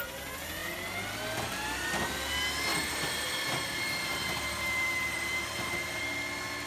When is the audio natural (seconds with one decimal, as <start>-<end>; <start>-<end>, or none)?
0.0-2.7; 6.0-6.7

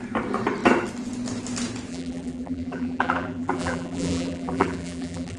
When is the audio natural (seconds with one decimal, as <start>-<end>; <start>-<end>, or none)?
0.0-1.9

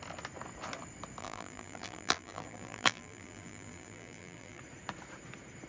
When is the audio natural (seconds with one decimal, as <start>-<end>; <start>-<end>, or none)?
0.0-1.2; 4.6-5.7

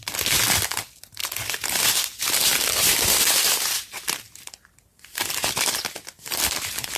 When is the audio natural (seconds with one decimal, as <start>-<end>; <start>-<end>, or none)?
0.0-1.2; 1.9-2.5; 3.6-4.9; 5.5-7.0

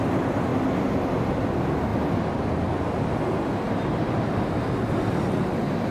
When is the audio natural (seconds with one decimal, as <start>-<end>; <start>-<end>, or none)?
0.5-1.1; 1.9-5.4

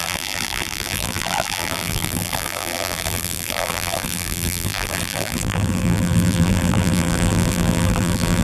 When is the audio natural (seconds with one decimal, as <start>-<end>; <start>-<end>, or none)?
none

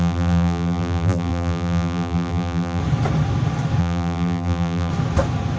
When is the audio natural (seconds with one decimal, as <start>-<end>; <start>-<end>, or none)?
2.8-3.8; 4.9-5.6